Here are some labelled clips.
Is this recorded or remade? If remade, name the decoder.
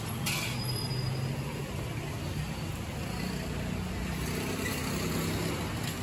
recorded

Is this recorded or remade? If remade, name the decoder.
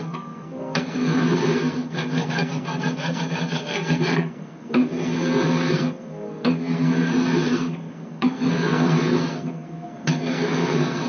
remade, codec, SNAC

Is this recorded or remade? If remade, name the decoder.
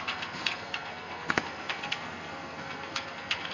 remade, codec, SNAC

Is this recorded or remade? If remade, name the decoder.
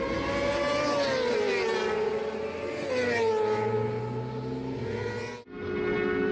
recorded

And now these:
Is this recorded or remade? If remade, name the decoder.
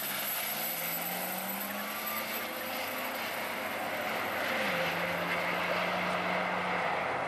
recorded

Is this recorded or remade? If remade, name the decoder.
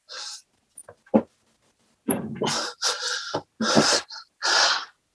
recorded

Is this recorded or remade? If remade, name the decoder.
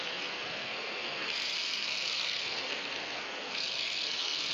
remade, codec, SNAC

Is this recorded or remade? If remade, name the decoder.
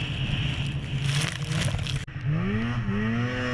recorded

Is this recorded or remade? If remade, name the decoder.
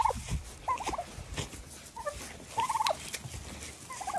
recorded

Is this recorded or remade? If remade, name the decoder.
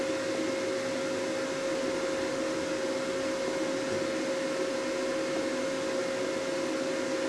recorded